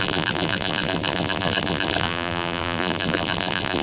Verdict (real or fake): fake